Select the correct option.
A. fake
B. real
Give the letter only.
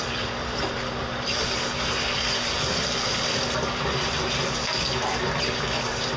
B